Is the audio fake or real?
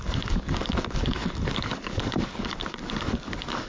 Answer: fake